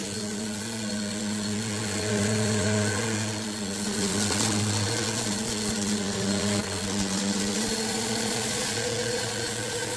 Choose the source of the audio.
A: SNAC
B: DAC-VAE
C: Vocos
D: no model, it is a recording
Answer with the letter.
C